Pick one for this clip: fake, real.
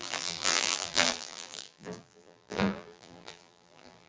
fake